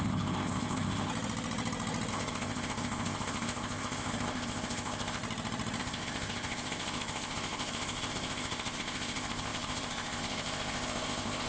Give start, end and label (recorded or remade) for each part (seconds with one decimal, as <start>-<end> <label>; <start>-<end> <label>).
0.0-1.1 remade; 1.1-2.1 recorded; 2.1-5.2 remade; 5.2-5.8 recorded; 5.8-11.5 remade